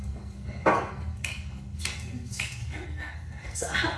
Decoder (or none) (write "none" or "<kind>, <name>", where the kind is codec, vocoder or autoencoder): codec, SNAC